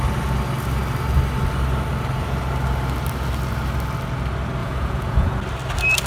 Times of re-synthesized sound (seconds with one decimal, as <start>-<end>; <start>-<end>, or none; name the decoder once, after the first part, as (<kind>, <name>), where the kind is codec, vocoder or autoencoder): 4.6-5.4 (vocoder, Vocos)